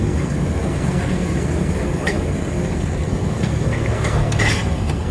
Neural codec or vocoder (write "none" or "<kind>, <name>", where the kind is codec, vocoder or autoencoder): codec, SNAC